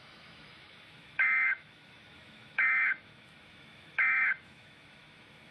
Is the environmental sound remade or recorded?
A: remade